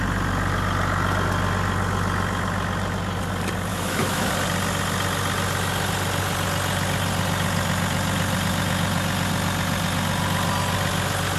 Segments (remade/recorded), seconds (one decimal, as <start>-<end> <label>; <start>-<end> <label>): 0.0-3.7 recorded; 3.7-4.3 remade; 4.3-11.4 recorded